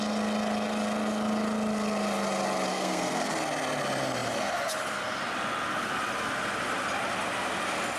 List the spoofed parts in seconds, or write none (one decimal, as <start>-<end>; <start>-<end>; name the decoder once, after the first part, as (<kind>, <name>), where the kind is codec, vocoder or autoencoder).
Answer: 2.7-3.3 (codec, SNAC)